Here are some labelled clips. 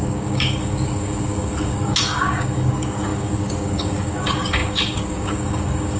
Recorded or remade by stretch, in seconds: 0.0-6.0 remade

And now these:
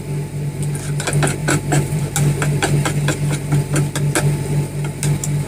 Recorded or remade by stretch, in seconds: 0.0-1.4 recorded; 1.4-2.0 remade; 2.0-5.5 recorded

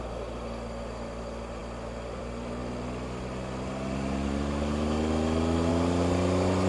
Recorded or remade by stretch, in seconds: 0.0-6.7 recorded

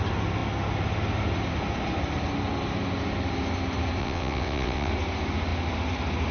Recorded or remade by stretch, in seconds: 0.0-4.0 recorded; 4.0-4.9 remade; 4.9-6.3 recorded

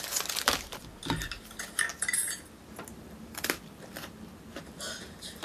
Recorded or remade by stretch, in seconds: 0.0-1.9 recorded; 1.9-5.4 remade

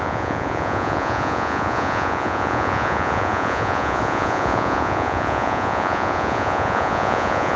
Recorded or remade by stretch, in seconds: 0.0-7.6 remade